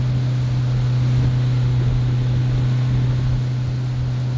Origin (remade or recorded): recorded